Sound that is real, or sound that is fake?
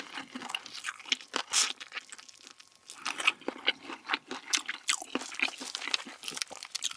real